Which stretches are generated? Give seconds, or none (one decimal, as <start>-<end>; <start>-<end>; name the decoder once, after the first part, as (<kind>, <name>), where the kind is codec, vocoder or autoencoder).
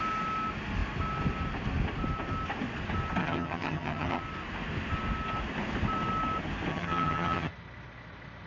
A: 3.2-4.2 (vocoder, HiFi-GAN); 6.7-7.5